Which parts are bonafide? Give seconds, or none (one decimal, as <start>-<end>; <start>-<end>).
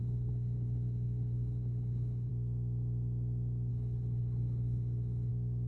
2.3-3.7; 5.3-5.7